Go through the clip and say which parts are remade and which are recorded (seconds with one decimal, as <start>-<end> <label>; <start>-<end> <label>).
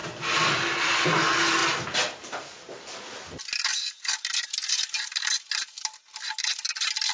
0.0-7.1 recorded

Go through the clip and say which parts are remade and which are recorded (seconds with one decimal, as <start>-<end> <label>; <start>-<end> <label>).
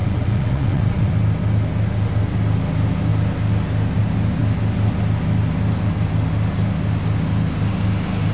0.0-1.1 remade; 1.1-8.3 recorded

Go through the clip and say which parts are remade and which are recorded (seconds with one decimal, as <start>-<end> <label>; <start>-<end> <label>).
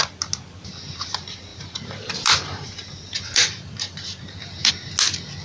0.0-1.5 recorded; 1.5-4.7 remade; 4.7-5.4 recorded